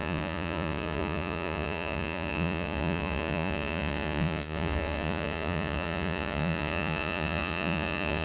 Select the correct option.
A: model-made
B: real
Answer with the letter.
A